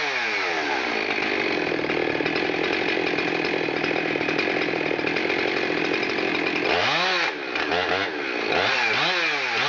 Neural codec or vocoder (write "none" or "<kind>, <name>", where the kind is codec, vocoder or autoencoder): none